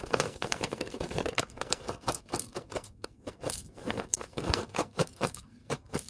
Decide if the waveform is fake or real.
fake